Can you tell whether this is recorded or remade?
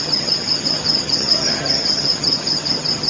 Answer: remade